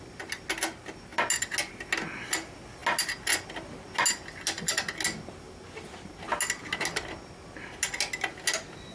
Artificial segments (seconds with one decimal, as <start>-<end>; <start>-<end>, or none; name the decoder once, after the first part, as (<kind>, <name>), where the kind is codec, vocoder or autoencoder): none